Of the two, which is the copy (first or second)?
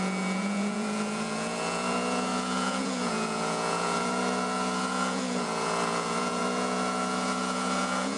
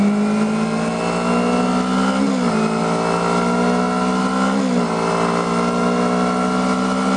first